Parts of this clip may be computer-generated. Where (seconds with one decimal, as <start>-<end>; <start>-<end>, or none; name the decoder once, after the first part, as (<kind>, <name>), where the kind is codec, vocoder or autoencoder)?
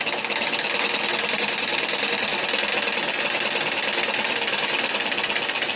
none